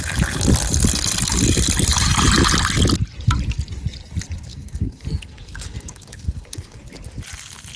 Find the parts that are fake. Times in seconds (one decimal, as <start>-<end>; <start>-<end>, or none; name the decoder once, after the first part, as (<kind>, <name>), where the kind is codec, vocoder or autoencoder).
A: 4.5-6.8 (codec, SNAC)